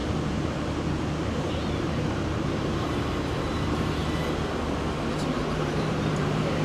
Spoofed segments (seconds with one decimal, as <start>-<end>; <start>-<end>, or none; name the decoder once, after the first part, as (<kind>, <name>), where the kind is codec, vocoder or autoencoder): 0.0-4.0 (vocoder, BigVGAN v2); 5.6-6.6